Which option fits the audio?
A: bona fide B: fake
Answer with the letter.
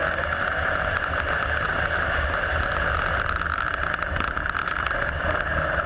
A